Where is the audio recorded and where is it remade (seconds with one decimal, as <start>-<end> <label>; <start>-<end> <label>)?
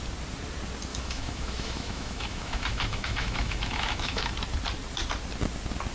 0.0-0.9 recorded; 0.9-4.3 remade; 4.3-5.9 recorded